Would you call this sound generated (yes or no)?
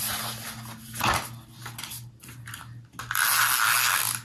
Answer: no